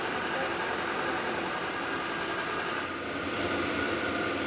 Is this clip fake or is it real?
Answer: real